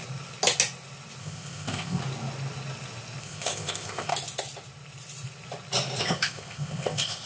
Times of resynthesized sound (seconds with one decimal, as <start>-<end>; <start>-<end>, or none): 1.2-2.0; 3.2-4.1; 6.0-7.3